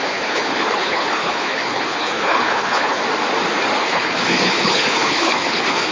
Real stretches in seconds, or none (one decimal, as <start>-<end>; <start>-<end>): 3.0-3.8